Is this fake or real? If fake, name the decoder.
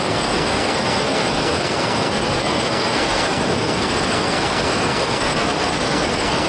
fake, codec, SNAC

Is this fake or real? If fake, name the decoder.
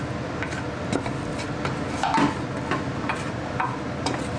real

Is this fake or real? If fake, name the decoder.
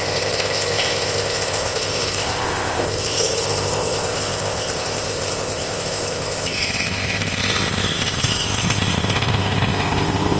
fake, codec, ZipCodec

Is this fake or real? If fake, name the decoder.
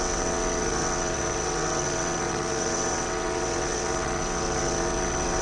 fake, vocoder, WaveNeXt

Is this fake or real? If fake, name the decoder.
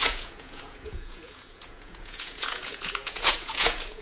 fake, vocoder, Vocos